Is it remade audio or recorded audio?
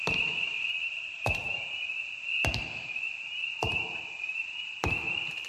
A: remade